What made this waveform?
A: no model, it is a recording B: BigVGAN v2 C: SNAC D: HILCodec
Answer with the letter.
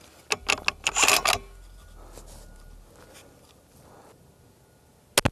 A